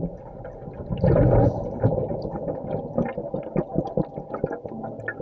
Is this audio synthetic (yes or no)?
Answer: no